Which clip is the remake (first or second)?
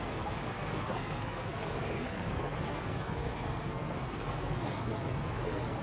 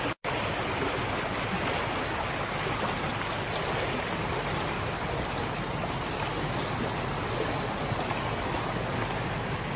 first